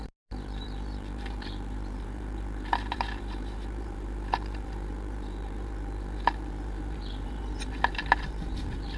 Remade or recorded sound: remade